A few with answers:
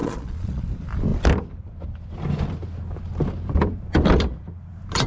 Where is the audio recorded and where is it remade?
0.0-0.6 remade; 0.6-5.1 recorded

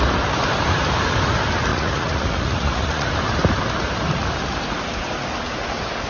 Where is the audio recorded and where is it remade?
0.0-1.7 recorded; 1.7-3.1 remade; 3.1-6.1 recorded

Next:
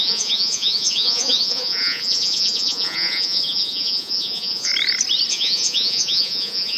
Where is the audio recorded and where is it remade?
0.0-4.7 remade; 4.7-5.3 recorded; 5.3-6.8 remade